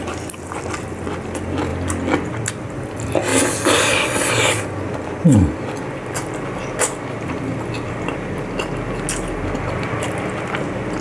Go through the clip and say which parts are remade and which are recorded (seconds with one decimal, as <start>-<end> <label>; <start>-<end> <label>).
0.0-11.0 recorded